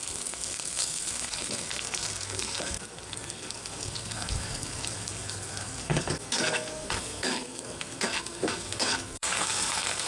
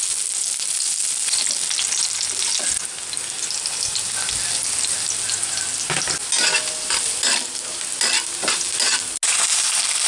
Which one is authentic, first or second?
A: second